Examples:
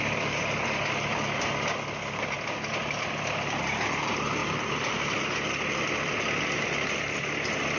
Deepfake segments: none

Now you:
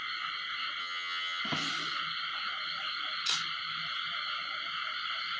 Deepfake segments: 0.8-1.4 (vocoder, HiFi-GAN)

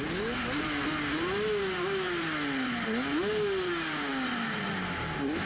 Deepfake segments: none

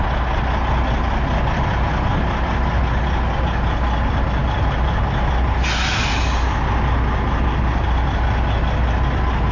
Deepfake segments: none